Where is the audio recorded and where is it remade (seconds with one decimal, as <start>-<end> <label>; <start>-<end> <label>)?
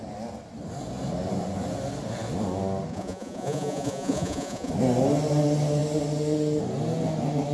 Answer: 0.0-2.9 recorded; 2.9-4.7 remade; 4.7-7.5 recorded